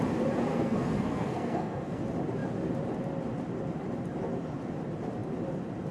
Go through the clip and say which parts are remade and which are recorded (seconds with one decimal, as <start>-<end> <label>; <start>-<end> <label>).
0.0-0.5 recorded; 0.5-2.0 remade; 2.0-5.9 recorded